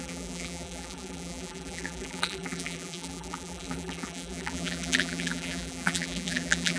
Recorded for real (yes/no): no